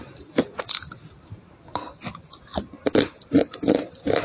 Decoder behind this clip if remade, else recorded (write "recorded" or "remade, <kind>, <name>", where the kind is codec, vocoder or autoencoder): recorded